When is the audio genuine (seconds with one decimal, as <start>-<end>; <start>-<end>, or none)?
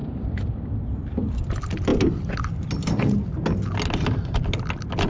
1.9-5.1